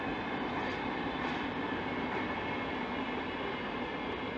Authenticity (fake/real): real